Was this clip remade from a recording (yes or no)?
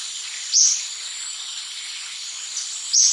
no